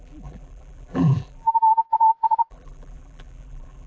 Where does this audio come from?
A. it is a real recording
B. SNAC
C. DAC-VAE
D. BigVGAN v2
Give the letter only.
D